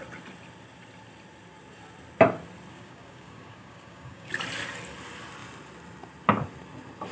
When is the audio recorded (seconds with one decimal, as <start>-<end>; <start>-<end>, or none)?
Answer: 0.0-2.7; 4.3-7.1